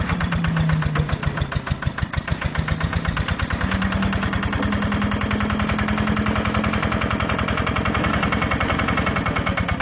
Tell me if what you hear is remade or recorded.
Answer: recorded